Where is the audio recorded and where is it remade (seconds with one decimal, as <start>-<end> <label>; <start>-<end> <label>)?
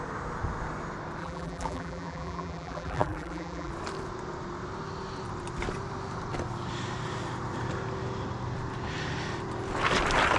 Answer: 0.0-1.2 recorded; 1.2-3.7 remade; 3.7-10.4 recorded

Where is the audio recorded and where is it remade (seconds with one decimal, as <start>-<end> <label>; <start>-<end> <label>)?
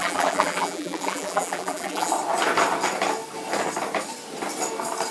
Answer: 0.0-2.1 remade; 2.1-5.1 recorded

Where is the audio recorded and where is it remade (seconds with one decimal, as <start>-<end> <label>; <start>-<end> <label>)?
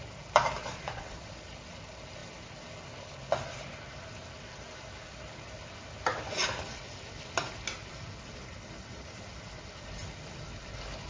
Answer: 0.0-0.6 recorded; 0.6-1.3 remade; 1.3-11.1 recorded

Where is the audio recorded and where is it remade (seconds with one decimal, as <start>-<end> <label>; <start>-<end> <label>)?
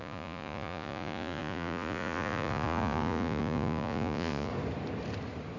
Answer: 0.0-4.5 remade; 4.5-5.6 recorded